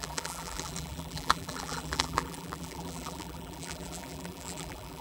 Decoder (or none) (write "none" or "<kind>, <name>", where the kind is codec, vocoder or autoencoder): vocoder, BigVGAN v2